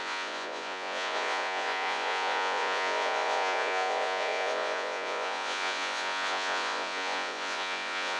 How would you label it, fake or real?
fake